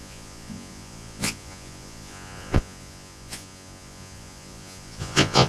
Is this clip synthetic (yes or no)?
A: yes